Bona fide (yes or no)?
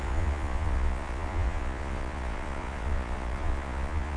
no